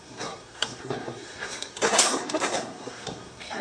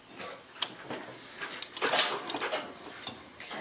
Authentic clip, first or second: second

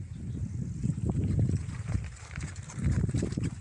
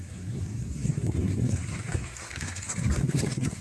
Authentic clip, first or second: first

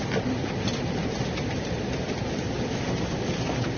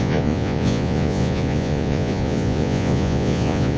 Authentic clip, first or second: first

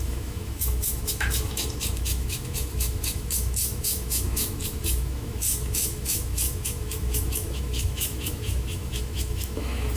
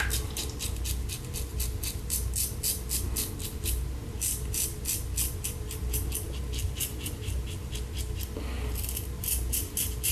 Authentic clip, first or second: second